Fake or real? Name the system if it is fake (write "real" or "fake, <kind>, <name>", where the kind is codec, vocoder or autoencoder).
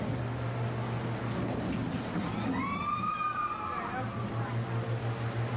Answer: real